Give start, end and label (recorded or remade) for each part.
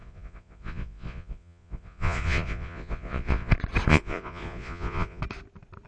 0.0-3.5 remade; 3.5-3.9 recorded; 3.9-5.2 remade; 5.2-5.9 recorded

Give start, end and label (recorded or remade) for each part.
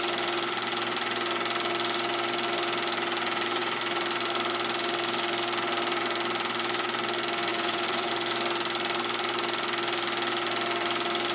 0.0-7.5 recorded; 7.5-8.1 remade; 8.1-11.3 recorded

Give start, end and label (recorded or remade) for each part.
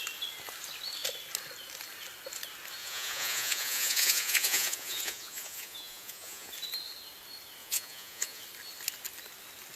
0.0-2.8 recorded; 2.8-6.5 remade; 6.5-7.6 recorded; 7.6-8.4 remade; 8.4-9.8 recorded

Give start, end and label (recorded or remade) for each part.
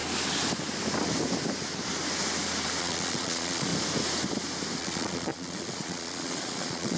0.0-2.8 recorded; 2.8-3.7 remade; 3.7-4.8 recorded; 4.8-7.0 remade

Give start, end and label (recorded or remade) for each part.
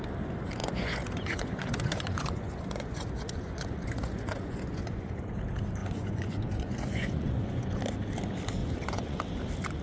0.0-0.6 recorded; 0.6-5.3 remade; 5.3-5.8 recorded; 5.8-7.8 remade; 7.8-8.6 recorded; 8.6-9.2 remade; 9.2-9.8 recorded